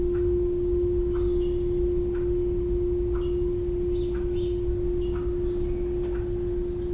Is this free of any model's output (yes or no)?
yes